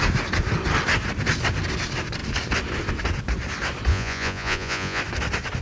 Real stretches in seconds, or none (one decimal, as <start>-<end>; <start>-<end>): 0.0-3.9; 5.0-5.6

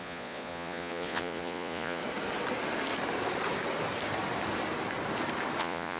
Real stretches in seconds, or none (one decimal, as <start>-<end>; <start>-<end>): 2.0-5.6

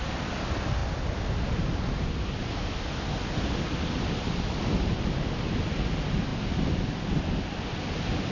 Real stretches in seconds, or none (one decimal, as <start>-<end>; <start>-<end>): 0.0-8.3

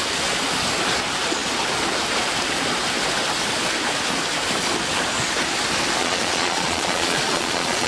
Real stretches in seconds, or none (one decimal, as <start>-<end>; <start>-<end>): 0.0-6.0

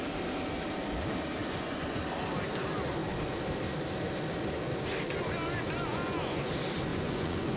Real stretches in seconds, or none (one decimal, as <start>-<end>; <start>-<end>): 0.0-1.4; 2.0-5.8; 6.5-6.9

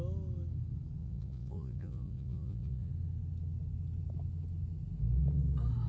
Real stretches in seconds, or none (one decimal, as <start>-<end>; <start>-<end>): 0.0-1.0; 2.9-5.9

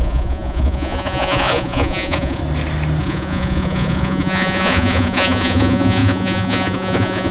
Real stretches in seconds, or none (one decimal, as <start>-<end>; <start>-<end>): 2.4-3.0